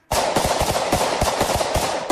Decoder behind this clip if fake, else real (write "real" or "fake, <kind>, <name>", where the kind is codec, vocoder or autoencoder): real